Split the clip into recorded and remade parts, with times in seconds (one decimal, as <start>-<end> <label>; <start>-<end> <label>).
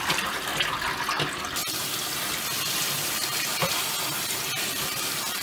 0.0-0.5 remade; 0.5-2.8 recorded; 2.8-3.6 remade; 3.6-4.8 recorded; 4.8-5.4 remade